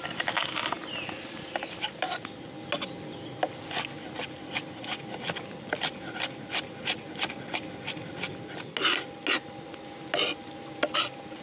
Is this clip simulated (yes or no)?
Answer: no